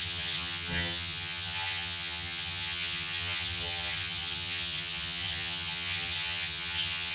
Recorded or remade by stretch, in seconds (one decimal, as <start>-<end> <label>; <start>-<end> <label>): 0.0-7.1 remade